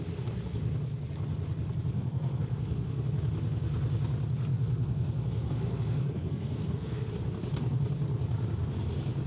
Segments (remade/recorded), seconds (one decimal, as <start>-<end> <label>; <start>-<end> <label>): 0.0-1.9 recorded; 1.9-2.9 remade; 2.9-4.5 recorded; 4.5-7.1 remade; 7.1-9.3 recorded